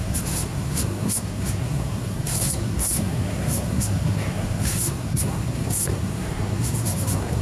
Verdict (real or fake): fake